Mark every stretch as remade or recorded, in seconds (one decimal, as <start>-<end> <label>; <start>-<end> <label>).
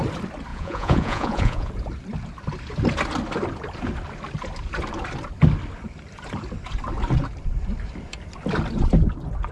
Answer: 0.0-0.5 recorded; 0.5-1.7 remade; 1.7-9.5 recorded